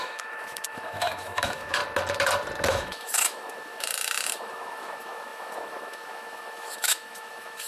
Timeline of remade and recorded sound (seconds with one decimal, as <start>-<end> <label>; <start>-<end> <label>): 0.0-1.8 remade; 1.8-2.7 recorded; 2.7-7.7 remade